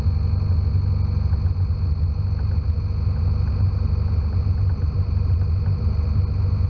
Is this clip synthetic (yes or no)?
no